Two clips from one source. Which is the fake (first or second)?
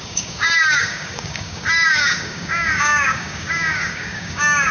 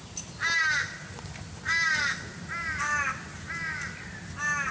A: first